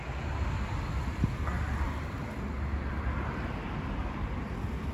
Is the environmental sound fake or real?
real